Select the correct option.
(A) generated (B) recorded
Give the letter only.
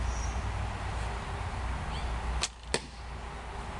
B